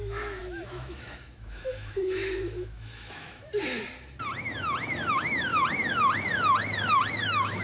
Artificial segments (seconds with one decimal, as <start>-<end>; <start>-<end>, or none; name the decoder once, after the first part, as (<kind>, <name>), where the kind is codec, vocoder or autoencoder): 0.0-3.5 (autoencoder, DAC-VAE); 5.1-5.5; 7.1-7.6